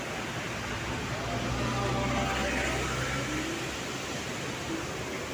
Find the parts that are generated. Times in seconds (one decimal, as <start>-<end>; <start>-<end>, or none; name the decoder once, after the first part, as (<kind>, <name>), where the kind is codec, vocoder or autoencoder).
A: none

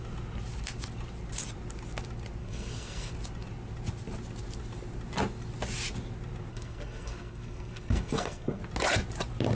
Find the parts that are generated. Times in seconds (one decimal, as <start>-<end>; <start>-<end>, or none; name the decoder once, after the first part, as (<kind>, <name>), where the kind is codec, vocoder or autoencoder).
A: 2.4-3.1 (codec, SNAC); 6.5-8.6

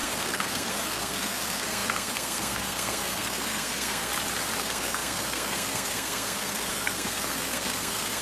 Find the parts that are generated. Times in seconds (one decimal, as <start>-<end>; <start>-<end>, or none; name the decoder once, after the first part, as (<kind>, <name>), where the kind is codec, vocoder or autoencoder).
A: 0.0-4.1 (codec, SNAC); 4.6-8.2

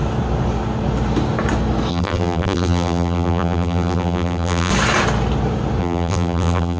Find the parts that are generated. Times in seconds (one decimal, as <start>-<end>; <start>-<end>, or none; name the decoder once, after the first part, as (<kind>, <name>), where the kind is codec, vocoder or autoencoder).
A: 1.9-4.7 (vocoder, BigVGAN v2); 5.8-6.8